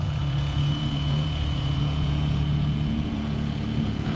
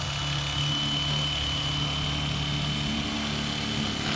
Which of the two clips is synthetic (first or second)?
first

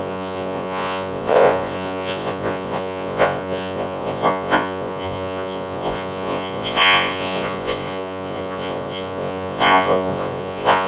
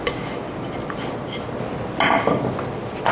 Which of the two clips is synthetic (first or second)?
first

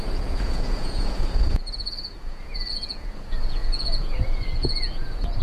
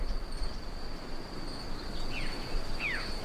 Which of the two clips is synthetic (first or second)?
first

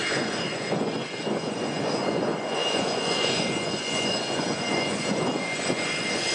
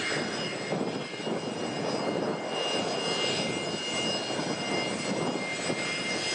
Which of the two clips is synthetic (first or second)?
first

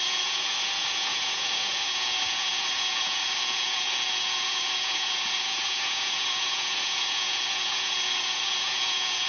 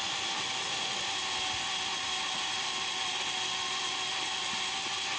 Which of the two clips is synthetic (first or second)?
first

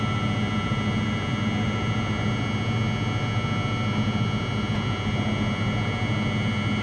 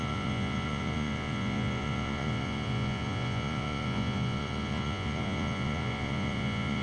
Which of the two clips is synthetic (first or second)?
second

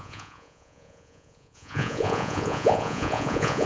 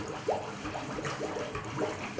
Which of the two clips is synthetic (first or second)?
first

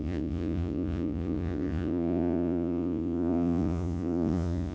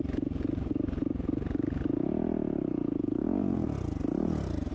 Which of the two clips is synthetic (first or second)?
first